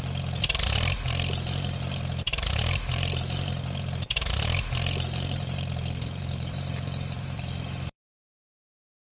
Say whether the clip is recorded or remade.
remade